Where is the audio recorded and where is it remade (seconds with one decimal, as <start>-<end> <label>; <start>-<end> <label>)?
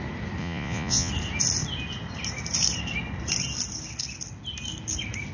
0.0-0.4 recorded; 0.4-1.1 remade; 1.1-5.3 recorded